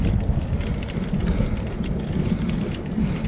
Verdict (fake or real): real